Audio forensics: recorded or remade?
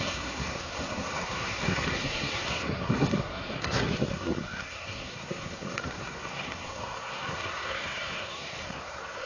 remade